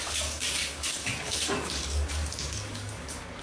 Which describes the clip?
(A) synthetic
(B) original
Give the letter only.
A